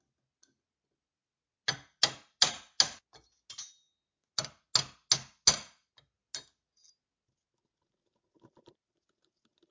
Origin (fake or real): real